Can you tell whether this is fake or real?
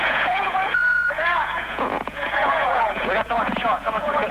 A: fake